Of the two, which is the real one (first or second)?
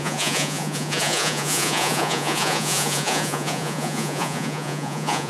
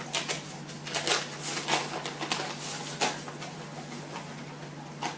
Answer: second